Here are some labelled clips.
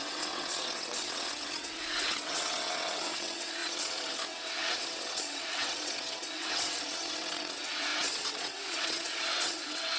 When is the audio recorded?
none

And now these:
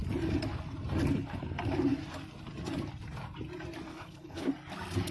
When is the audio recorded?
0.0-3.9; 4.5-5.1

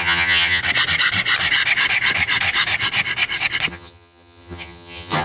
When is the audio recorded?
0.6-3.7

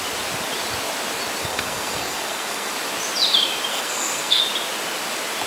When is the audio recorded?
0.0-1.4; 2.7-3.7; 4.4-5.5

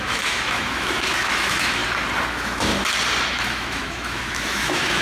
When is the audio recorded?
1.8-2.3; 2.7-3.3

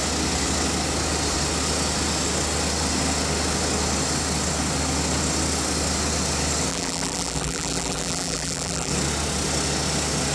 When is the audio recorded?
0.0-6.7; 8.9-10.3

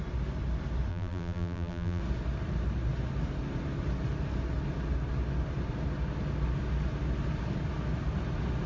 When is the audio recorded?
0.0-0.9; 2.0-8.7